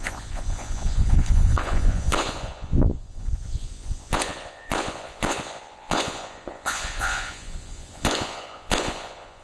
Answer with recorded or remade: remade